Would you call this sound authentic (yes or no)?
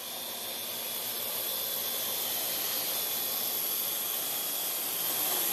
yes